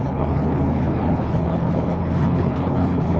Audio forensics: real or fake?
fake